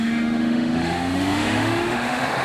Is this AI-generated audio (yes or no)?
yes